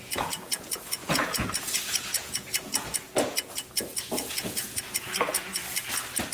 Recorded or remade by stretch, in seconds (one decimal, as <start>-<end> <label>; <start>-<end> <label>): 0.0-5.6 remade; 5.6-6.3 recorded